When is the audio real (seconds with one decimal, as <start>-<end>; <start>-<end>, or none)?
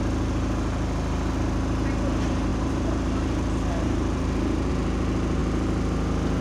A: 0.0-2.5; 4.7-6.4